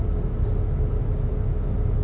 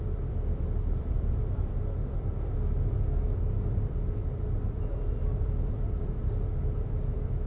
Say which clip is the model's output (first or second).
second